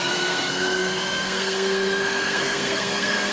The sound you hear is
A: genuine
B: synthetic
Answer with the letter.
B